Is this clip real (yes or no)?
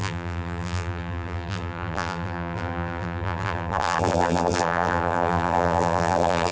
no